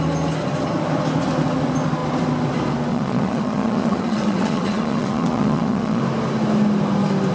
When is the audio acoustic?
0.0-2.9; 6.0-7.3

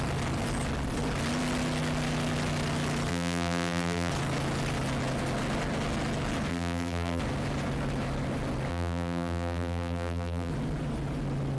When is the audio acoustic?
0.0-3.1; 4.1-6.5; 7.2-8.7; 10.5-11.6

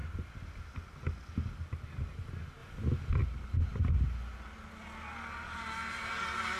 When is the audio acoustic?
0.0-6.6